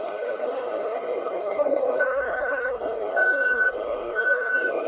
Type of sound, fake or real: fake